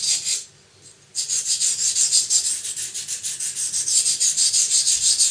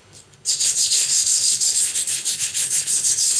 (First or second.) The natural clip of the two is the first